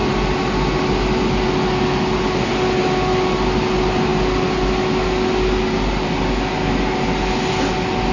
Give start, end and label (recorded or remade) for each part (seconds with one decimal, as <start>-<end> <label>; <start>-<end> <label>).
0.0-8.1 recorded